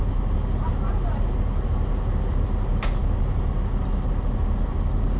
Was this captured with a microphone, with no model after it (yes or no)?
yes